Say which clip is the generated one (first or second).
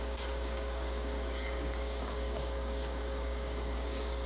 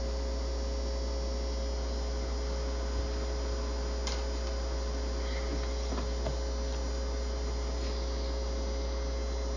first